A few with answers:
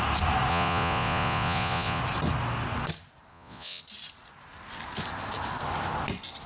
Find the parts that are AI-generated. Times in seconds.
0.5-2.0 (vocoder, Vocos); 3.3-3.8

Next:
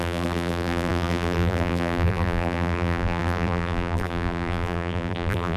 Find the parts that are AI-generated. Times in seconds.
0.0-5.6 (vocoder, BigVGAN v2)

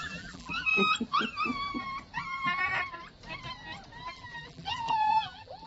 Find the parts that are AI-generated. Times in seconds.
0.0-0.7 (vocoder, BigVGAN v2); 4.1-5.7

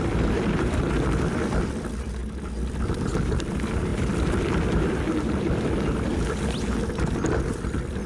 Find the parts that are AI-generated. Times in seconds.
0.0-2.2 (vocoder, BigVGAN v2); 2.8-6.1; 7.3-8.1

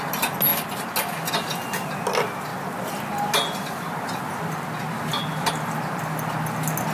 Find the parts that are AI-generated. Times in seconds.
none

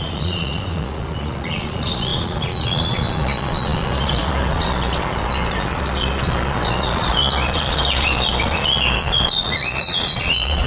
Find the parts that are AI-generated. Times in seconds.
0.0-10.7 (vocoder, Vocos)

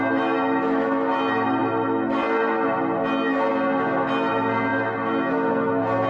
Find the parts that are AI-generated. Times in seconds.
none

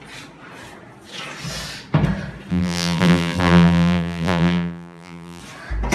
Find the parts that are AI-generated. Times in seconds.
2.5-5.4 (vocoder, BigVGAN v2)